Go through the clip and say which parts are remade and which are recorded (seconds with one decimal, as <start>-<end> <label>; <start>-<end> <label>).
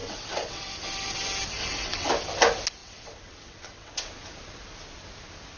0.0-0.7 remade; 0.7-1.6 recorded; 1.6-2.1 remade; 2.1-2.8 recorded; 2.8-4.1 remade; 4.1-5.6 recorded